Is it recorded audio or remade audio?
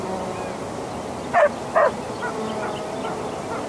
recorded